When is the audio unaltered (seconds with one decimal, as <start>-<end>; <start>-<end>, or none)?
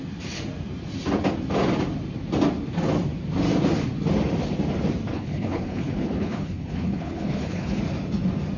0.0-5.1; 7.8-8.6